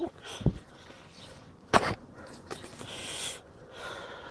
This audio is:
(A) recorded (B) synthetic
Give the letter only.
B